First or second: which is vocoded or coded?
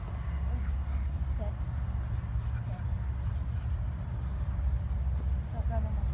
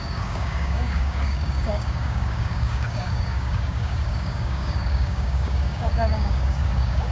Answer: second